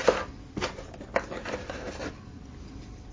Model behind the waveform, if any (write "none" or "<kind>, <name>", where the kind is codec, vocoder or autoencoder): none